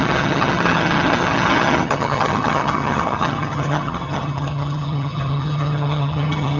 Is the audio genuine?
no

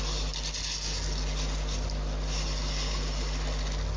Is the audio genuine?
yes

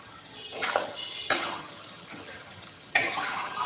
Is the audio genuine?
no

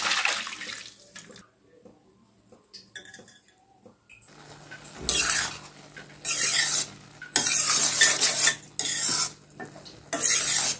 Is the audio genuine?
yes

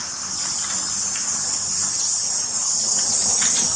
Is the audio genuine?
yes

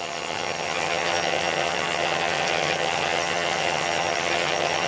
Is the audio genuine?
no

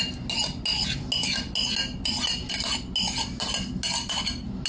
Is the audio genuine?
yes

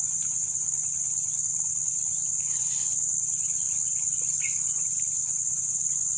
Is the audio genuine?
yes